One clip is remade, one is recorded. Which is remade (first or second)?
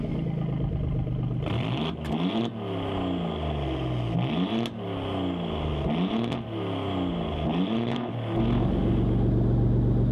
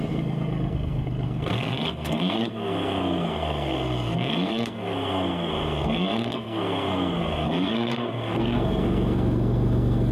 second